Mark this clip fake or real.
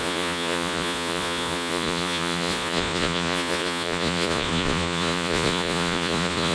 fake